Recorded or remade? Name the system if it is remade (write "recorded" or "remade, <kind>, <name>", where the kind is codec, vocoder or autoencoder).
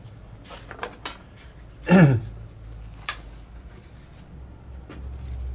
recorded